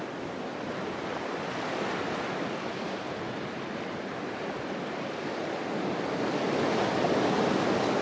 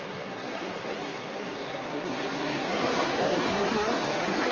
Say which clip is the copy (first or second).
second